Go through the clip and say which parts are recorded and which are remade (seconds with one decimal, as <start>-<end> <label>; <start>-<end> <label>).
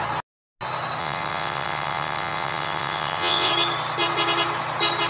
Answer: 0.0-1.0 recorded; 1.0-3.5 remade; 3.5-5.1 recorded